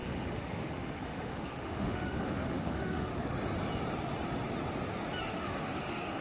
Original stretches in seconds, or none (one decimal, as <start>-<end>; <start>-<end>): 3.1-5.2